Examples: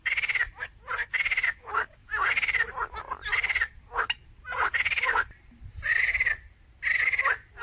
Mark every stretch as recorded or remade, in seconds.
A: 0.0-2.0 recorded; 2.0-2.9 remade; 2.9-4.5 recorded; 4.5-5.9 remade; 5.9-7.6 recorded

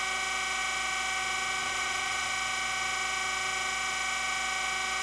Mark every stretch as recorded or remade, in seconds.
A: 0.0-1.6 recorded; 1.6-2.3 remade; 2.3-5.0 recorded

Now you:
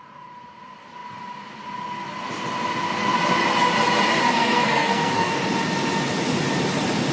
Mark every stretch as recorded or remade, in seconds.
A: 0.0-4.3 recorded; 4.3-5.3 remade; 5.3-7.1 recorded

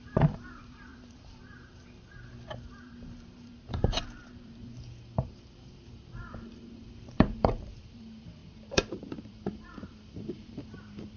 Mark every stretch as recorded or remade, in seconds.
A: 0.0-11.2 remade

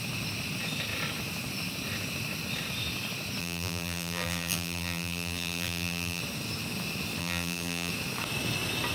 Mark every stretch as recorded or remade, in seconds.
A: 0.0-3.4 recorded; 3.4-6.2 remade; 6.2-7.2 recorded; 7.2-7.9 remade; 7.9-8.9 recorded